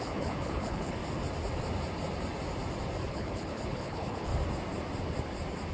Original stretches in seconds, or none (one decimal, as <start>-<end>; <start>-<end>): 1.0-3.1; 4.3-5.7